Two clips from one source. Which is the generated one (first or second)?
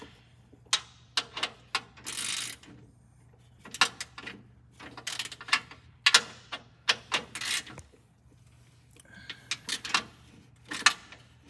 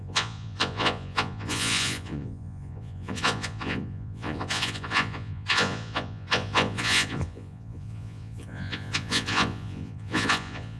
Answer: second